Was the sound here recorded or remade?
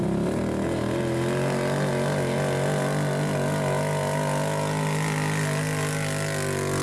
recorded